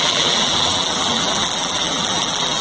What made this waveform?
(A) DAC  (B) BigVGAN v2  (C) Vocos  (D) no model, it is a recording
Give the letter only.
B